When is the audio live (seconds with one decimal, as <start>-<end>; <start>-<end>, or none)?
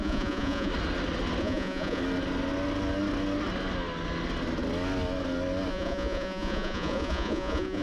0.7-1.4; 2.0-5.7